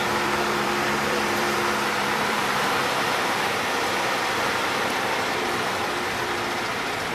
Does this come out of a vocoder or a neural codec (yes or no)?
yes